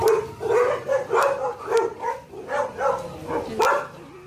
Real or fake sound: real